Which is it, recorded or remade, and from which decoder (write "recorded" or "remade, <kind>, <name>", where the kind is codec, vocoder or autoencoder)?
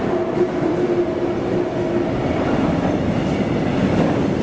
recorded